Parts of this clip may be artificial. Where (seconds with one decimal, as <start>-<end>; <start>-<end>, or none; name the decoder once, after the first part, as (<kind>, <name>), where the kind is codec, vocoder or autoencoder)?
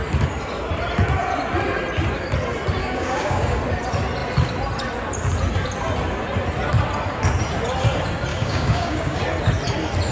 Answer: 2.8-3.6 (codec, DAC); 8.3-9.2